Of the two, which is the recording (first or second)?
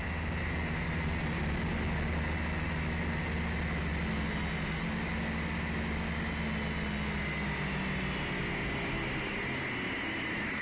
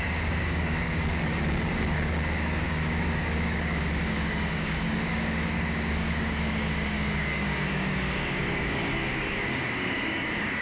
first